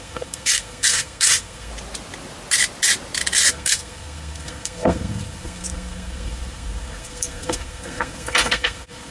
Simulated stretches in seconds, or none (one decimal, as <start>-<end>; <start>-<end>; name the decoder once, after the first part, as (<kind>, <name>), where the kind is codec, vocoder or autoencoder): 0.0-1.7 (codec, SNAC); 3.5-9.1